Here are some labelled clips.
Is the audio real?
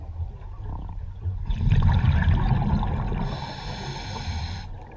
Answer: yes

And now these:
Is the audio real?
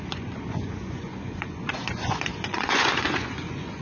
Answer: no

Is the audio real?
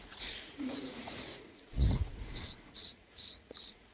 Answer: no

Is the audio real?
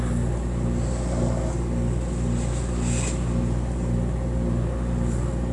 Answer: yes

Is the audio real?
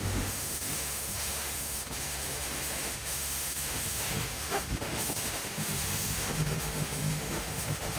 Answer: no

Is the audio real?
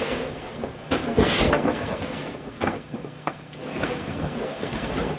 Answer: no